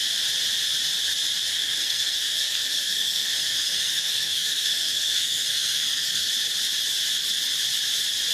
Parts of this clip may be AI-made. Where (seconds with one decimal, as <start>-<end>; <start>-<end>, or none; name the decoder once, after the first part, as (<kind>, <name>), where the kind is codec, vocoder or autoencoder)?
1.5-6.3 (codec, SNAC)